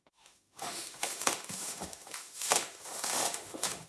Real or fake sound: fake